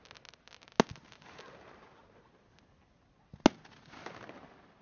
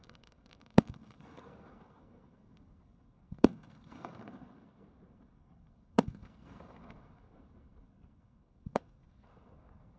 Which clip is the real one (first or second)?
first